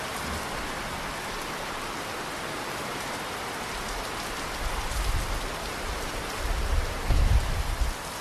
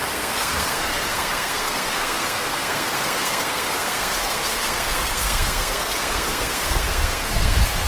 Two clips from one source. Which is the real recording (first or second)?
first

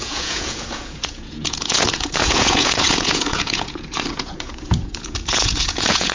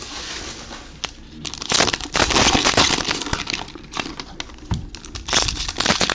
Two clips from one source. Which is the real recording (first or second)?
second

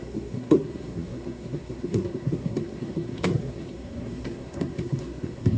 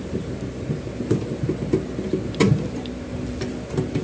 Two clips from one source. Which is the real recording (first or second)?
second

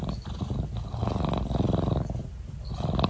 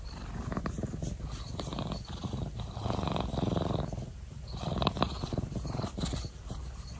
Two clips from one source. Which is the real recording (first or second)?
first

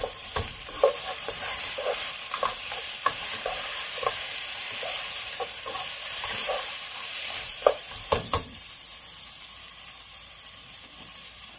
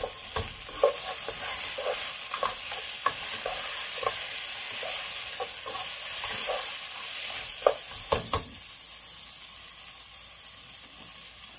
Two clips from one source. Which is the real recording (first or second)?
second